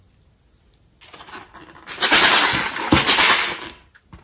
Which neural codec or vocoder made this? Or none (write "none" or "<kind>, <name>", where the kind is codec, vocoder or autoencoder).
none